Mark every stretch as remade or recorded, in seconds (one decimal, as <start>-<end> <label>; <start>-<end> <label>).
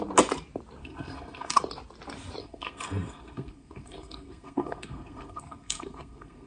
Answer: 0.0-0.8 recorded; 0.8-1.6 remade; 1.6-2.4 recorded; 2.4-6.5 remade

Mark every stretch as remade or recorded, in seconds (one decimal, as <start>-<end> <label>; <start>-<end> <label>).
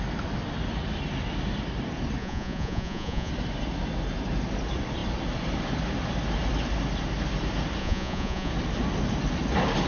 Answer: 0.0-2.2 recorded; 2.2-3.3 remade; 3.3-7.8 recorded; 7.8-8.5 remade; 8.5-9.9 recorded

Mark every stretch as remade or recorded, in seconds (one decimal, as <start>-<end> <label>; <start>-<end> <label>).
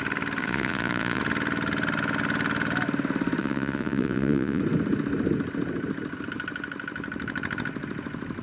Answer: 0.0-0.4 recorded; 0.4-1.2 remade; 1.2-3.4 recorded; 3.4-4.6 remade; 4.6-8.4 recorded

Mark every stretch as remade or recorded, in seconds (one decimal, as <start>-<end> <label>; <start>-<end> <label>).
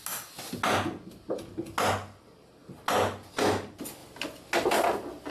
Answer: 0.0-5.3 recorded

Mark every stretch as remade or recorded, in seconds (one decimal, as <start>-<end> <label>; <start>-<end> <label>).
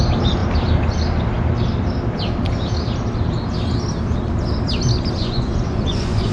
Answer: 0.0-5.2 recorded; 5.2-6.3 remade